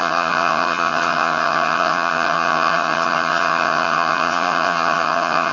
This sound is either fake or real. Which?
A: fake